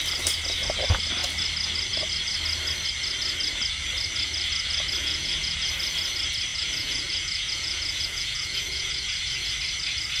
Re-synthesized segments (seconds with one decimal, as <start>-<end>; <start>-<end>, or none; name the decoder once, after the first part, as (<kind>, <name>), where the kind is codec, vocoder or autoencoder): 5.0-5.7 (vocoder, Vocos); 6.5-9.5